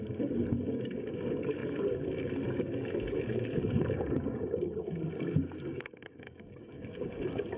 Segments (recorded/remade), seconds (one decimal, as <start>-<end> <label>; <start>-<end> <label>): 0.0-7.6 remade